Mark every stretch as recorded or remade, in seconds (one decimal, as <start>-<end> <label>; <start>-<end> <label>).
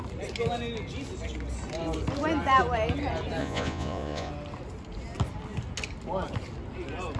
0.0-3.4 recorded; 3.4-4.3 remade; 4.3-7.2 recorded